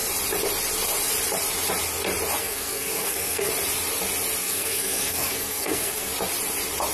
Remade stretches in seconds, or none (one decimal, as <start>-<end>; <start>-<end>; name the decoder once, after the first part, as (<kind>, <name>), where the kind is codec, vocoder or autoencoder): 2.4-3.5 (codec, SNAC); 4.4-6.1